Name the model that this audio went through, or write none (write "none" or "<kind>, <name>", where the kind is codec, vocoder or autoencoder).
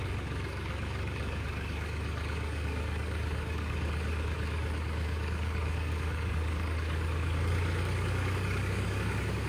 codec, DAC